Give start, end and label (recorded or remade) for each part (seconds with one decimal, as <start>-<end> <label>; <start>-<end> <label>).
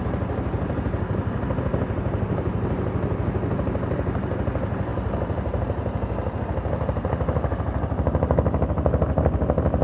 0.0-9.8 recorded